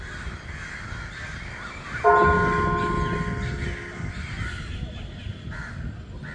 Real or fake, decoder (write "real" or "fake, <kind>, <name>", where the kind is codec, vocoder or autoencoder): real